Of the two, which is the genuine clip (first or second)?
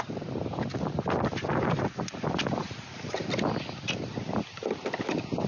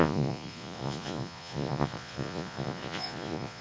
first